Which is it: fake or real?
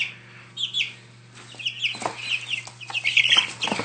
real